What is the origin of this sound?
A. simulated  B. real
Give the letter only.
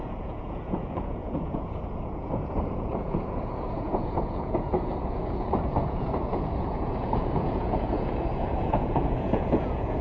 A